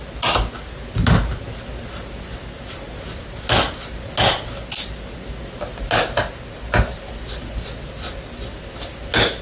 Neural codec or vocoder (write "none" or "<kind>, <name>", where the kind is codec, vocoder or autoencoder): none